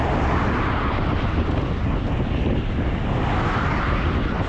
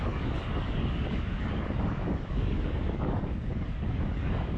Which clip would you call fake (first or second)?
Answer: second